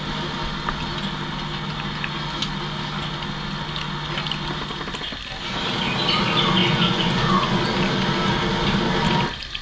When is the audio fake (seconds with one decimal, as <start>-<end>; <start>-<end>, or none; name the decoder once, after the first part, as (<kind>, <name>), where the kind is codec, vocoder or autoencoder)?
6.6-7.6 (vocoder, Vocos)